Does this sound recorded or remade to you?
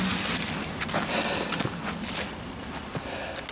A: recorded